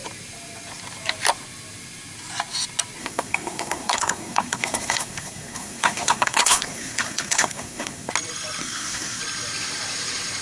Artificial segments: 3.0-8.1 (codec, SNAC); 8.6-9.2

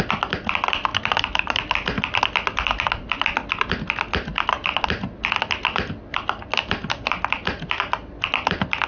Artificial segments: none

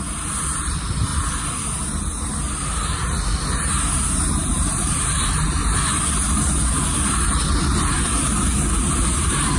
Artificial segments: 0.0-1.1 (vocoder, BigVGAN v2); 3.7-5.6; 7.9-9.6

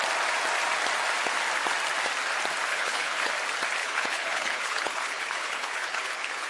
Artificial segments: 2.7-3.3 (codec, HILCodec); 3.8-6.5